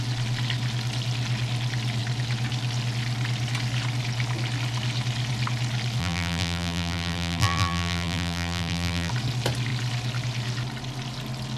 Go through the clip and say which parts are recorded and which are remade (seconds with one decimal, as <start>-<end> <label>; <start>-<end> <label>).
0.0-6.0 recorded; 6.0-9.1 remade; 9.1-11.6 recorded